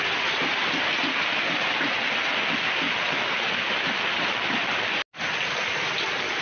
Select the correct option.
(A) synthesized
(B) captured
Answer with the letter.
B